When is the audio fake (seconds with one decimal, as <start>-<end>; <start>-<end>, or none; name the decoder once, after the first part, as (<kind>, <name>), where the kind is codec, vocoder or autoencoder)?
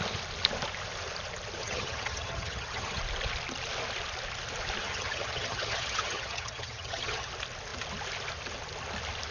1.6-3.0 (vocoder, HiFi-GAN); 4.8-7.3